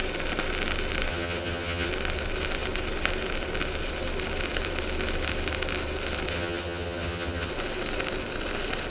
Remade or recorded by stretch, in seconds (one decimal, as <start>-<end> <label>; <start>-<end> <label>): 0.0-1.1 recorded; 1.1-1.9 remade; 1.9-6.3 recorded; 6.3-7.5 remade; 7.5-8.9 recorded